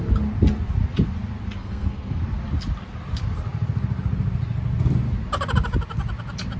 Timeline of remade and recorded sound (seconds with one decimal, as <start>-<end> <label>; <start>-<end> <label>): 0.0-1.6 recorded; 1.6-2.2 remade; 2.2-6.6 recorded